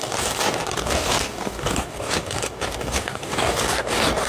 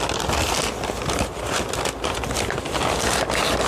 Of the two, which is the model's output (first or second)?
first